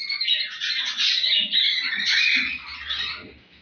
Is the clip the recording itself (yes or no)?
yes